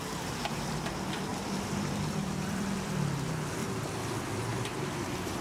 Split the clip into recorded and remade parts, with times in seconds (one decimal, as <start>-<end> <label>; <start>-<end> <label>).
0.0-0.4 recorded; 0.4-0.9 remade; 0.9-1.3 recorded; 1.3-2.9 remade; 2.9-3.6 recorded; 3.6-5.4 remade